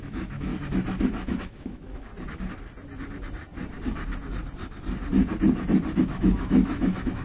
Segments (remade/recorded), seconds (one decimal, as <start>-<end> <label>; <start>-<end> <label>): 0.0-0.5 remade; 0.5-1.4 recorded; 1.4-2.1 remade; 2.1-6.0 recorded; 6.0-7.2 remade